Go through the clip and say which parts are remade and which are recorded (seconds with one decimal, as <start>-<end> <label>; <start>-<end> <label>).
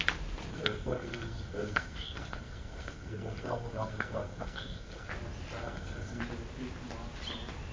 0.0-0.5 recorded; 0.5-5.1 remade; 5.1-5.6 recorded; 5.6-6.2 remade; 6.2-7.7 recorded